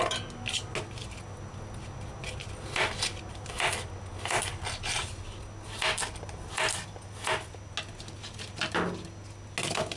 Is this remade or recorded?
recorded